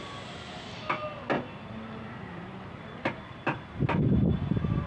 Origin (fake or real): real